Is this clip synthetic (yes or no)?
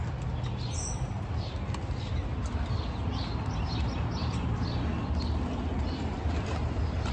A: no